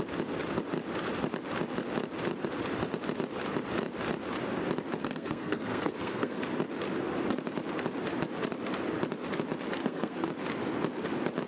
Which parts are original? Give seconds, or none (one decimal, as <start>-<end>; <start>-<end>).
0.0-5.0; 6.4-9.8; 10.3-11.5